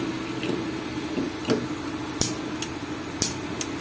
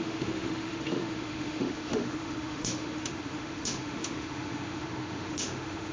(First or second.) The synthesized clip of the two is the second